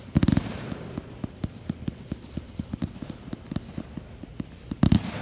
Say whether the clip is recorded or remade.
recorded